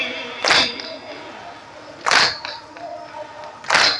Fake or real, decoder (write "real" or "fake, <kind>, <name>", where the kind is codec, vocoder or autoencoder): real